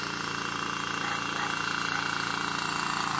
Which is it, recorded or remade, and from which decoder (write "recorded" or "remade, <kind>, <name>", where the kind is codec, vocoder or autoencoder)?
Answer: recorded